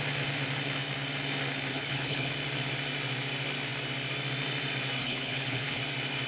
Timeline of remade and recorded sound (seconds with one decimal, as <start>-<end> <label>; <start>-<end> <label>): 0.0-1.7 recorded; 1.7-2.3 remade; 2.3-5.0 recorded; 5.0-5.8 remade; 5.8-6.3 recorded